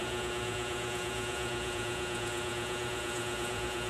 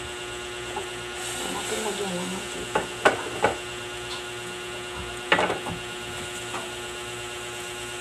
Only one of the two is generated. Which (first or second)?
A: first